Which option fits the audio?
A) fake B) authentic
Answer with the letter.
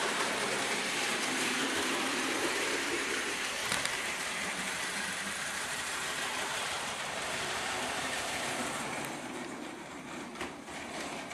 A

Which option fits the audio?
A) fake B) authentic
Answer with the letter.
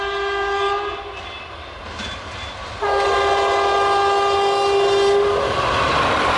B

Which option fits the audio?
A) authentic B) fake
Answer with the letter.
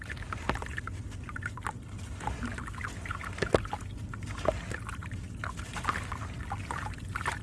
A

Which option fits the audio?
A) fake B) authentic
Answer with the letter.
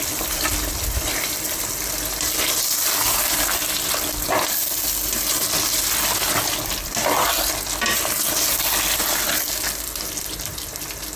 B